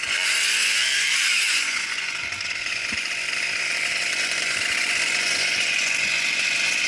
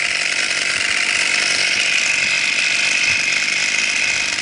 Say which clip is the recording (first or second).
second